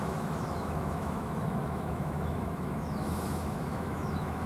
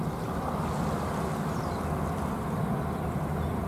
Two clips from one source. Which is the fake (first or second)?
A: first